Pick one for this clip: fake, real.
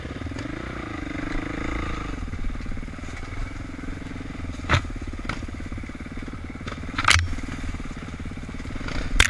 real